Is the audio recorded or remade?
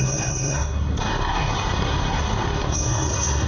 remade